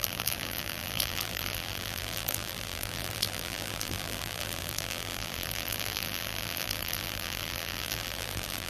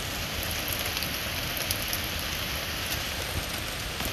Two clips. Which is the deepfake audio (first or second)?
first